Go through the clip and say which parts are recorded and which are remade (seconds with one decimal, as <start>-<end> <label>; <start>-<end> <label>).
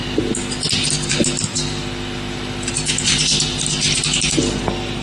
0.0-5.0 recorded